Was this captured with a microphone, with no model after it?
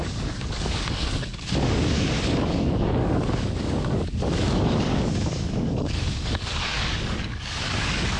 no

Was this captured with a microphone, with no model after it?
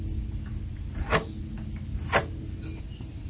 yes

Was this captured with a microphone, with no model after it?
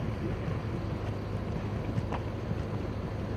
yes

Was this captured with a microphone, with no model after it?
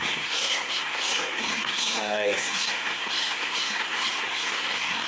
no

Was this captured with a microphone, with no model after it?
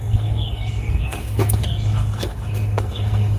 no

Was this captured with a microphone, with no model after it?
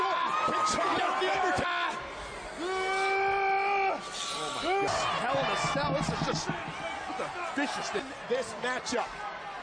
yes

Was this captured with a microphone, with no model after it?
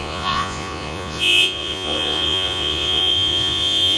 no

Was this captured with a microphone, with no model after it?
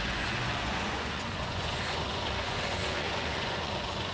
no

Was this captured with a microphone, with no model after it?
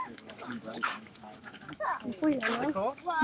no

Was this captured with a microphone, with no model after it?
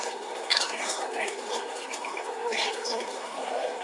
no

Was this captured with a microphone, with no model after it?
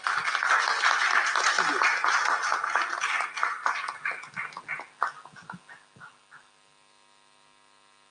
yes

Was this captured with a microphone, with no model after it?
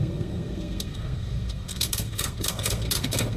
no